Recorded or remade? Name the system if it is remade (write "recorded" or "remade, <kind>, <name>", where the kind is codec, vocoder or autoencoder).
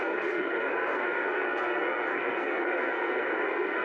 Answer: remade, codec, SNAC